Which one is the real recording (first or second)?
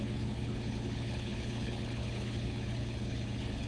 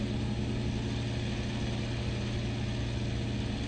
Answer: second